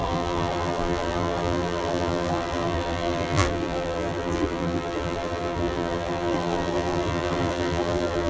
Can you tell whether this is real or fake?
fake